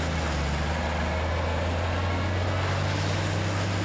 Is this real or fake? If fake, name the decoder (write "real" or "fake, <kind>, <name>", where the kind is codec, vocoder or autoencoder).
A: real